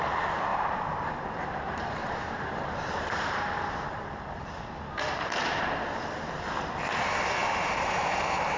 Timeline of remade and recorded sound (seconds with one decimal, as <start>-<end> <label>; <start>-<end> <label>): 0.0-0.5 recorded; 0.5-5.6 remade; 5.6-7.4 recorded; 7.4-8.2 remade; 8.2-8.6 recorded